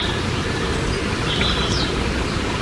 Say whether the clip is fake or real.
real